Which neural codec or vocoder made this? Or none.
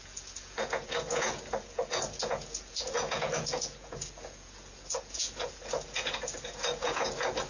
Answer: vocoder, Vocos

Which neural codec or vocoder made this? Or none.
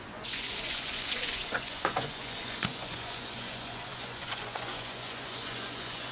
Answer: vocoder, Vocos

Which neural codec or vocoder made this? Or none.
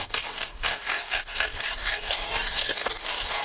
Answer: codec, DAC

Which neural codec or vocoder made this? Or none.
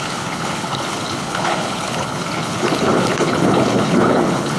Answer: codec, HILCodec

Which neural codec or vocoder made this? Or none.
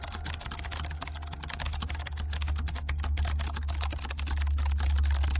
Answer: none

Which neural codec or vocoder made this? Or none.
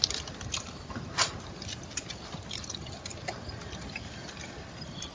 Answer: none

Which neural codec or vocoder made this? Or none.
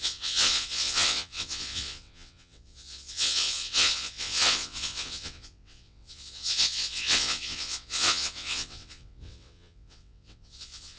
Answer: vocoder, WaveNeXt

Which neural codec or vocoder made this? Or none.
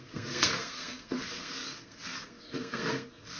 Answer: codec, SNAC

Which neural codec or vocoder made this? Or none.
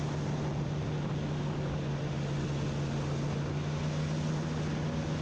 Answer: none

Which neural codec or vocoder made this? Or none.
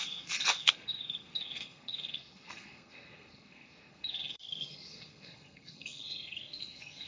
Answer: codec, SNAC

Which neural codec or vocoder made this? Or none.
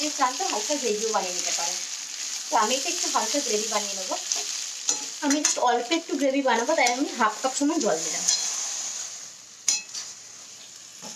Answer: none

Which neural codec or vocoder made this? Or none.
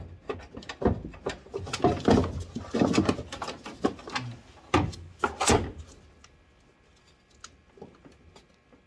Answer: none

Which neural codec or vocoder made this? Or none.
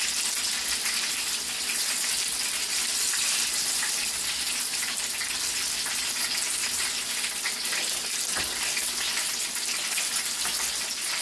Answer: none